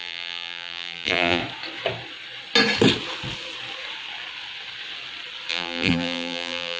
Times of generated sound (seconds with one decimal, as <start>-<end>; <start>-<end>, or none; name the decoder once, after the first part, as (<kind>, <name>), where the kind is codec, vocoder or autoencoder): 0.0-1.4 (vocoder, BigVGAN v2); 5.5-6.8